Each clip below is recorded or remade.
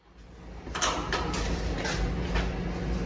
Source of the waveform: recorded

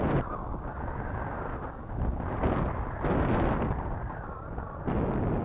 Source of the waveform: recorded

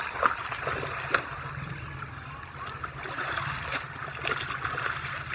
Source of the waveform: recorded